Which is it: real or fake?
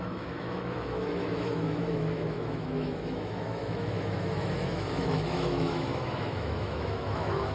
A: fake